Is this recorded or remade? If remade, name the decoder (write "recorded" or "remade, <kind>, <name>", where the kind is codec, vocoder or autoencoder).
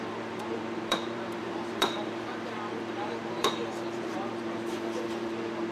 remade, vocoder, BigVGAN v2